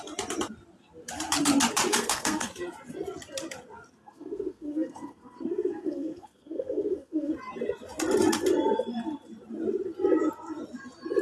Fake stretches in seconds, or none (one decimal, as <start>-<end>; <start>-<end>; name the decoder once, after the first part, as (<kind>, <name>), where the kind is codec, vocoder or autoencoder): 1.9-2.5 (codec, SNAC); 4.0-7.3